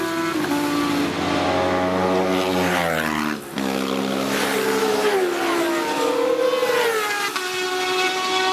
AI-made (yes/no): no